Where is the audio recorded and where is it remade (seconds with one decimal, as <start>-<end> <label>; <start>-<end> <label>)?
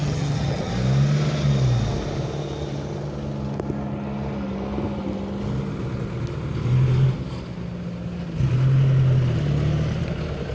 0.0-0.7 remade; 0.7-10.5 recorded